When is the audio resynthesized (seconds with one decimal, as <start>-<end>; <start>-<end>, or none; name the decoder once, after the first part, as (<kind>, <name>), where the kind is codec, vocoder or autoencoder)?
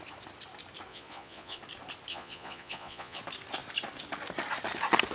0.9-1.6 (vocoder, Vocos); 2.1-3.2